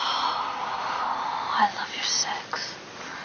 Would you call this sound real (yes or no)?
yes